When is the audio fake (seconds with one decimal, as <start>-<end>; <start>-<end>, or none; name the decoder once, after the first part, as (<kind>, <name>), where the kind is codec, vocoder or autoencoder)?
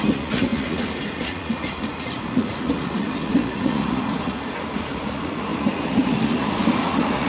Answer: 0.0-7.3 (vocoder, Vocos)